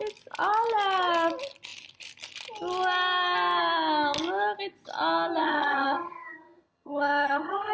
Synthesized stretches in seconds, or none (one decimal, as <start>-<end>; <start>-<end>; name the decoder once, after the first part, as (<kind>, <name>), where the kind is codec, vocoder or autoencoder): 5.4-7.7 (vocoder, HiFi-GAN)